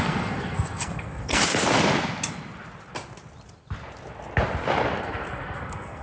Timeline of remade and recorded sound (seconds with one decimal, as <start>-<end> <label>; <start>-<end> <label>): 0.0-1.4 remade; 1.4-5.0 recorded; 5.0-6.0 remade